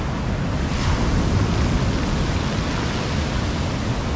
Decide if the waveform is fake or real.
real